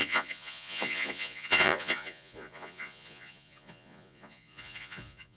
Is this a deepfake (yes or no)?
yes